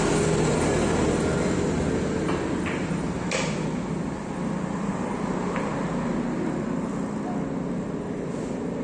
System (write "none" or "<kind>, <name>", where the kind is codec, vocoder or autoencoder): none